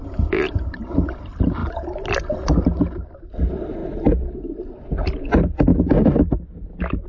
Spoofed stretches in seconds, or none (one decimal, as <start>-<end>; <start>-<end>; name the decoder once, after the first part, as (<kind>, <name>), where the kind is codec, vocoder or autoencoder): 0.0-0.9 (vocoder, BigVGAN v2); 1.6-2.2